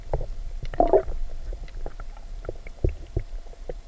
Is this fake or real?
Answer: real